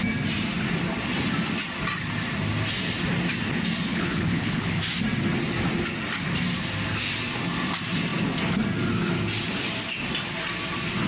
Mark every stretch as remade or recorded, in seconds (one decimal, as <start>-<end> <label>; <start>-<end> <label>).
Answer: 0.0-3.9 recorded; 3.9-4.8 remade; 4.8-11.1 recorded